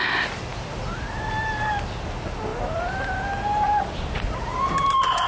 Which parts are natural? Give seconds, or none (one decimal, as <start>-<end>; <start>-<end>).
0.0-5.3